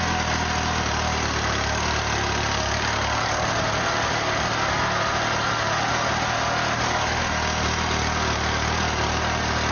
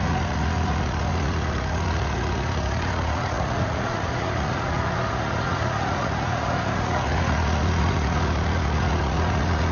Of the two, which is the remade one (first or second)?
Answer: second